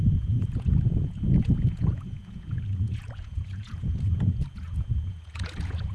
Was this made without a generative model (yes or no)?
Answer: no